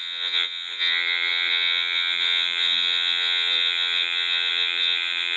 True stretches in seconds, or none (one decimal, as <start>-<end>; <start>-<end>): none